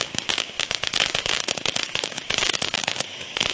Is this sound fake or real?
fake